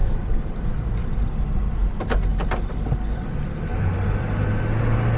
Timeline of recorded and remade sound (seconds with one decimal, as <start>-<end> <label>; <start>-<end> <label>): 0.0-0.6 remade; 0.6-1.0 recorded; 1.0-1.6 remade; 1.6-2.3 recorded; 2.3-4.6 remade; 4.6-5.2 recorded